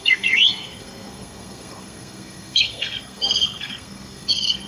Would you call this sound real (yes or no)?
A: no